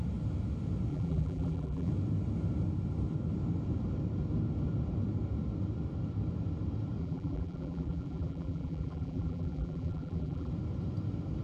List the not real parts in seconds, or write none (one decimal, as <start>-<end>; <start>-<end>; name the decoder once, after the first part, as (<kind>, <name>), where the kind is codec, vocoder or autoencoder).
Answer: 0.9-1.9 (vocoder, BigVGAN v2); 7.0-10.5